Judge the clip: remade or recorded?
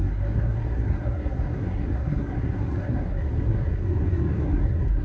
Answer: remade